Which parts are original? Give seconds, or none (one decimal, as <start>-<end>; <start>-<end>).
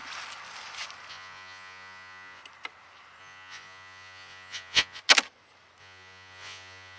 0.0-1.1; 2.4-3.2; 5.0-5.8